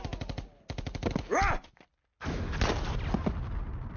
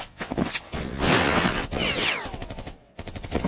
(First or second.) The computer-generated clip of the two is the second